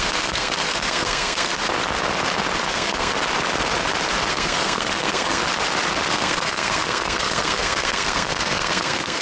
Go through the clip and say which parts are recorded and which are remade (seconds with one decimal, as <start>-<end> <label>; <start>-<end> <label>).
0.0-1.5 remade; 1.5-2.7 recorded; 2.7-3.1 remade; 3.1-4.3 recorded; 4.3-5.4 remade; 5.4-6.1 recorded; 6.1-9.2 remade